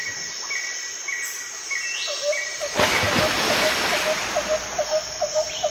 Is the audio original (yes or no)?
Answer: yes